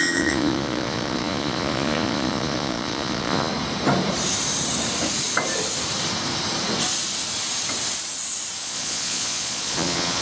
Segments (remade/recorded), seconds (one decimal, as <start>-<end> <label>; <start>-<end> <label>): 0.0-3.5 remade; 3.5-8.6 recorded; 8.6-10.2 remade